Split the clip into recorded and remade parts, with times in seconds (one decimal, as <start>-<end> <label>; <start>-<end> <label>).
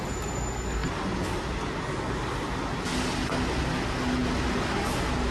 0.0-5.3 recorded